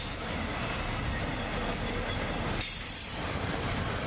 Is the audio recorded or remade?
recorded